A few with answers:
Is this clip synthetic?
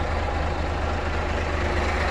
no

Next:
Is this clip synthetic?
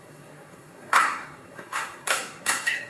yes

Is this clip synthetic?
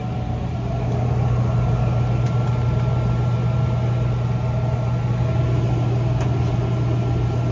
no